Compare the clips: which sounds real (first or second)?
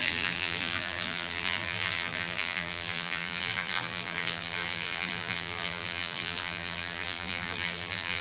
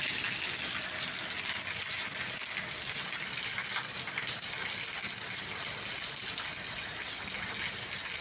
second